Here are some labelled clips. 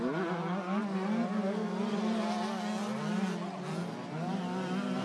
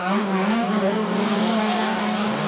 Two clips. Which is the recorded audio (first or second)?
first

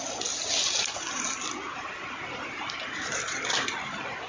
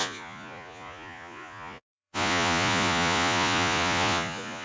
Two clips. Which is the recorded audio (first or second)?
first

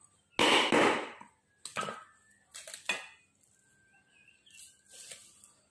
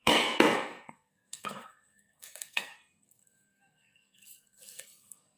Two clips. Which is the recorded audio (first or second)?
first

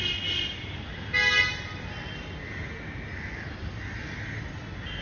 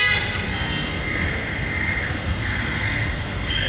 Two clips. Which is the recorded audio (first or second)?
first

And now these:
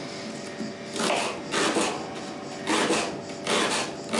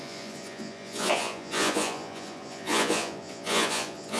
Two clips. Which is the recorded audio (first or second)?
first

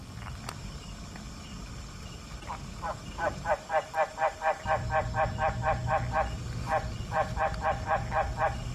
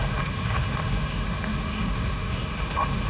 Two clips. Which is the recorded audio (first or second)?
first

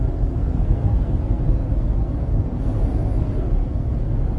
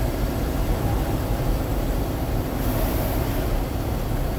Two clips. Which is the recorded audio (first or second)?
second